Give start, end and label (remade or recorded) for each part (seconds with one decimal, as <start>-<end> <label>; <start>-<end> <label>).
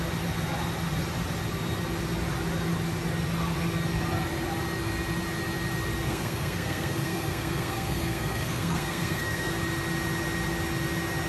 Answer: 0.0-6.1 recorded; 6.1-9.5 remade; 9.5-11.3 recorded